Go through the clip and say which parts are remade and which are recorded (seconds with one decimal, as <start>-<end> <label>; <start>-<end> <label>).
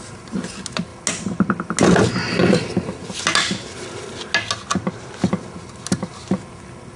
0.0-7.0 recorded